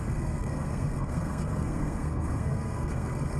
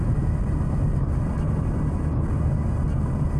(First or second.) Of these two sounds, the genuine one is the second